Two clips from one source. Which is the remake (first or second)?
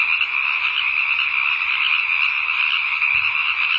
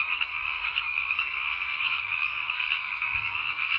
second